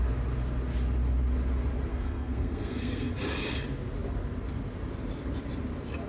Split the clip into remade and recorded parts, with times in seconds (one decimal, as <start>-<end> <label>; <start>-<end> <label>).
0.0-1.9 recorded; 1.9-3.1 remade; 3.1-6.1 recorded